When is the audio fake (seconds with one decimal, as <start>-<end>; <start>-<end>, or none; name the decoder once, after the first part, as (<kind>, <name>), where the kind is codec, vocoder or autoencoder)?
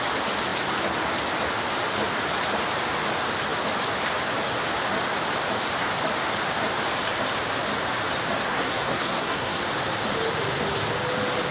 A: 8.4-9.6 (codec, SNAC)